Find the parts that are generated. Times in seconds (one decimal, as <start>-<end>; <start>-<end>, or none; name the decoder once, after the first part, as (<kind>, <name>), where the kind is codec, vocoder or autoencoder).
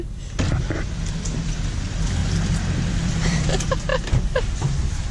0.0-2.2 (vocoder, BigVGAN v2); 2.9-5.1